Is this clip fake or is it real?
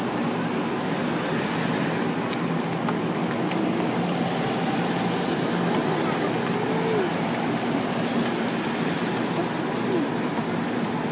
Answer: real